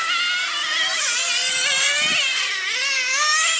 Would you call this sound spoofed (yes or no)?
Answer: no